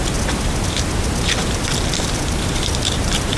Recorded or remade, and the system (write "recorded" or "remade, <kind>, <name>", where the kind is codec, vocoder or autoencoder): recorded